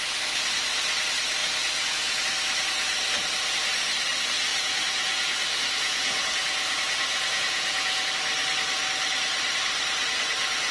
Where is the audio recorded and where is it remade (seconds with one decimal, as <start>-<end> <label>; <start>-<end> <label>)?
0.0-1.4 recorded; 1.4-2.2 remade; 2.2-4.5 recorded; 4.5-8.1 remade; 8.1-10.7 recorded